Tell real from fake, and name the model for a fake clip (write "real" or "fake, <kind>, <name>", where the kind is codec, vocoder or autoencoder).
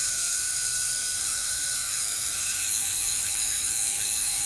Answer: fake, codec, SNAC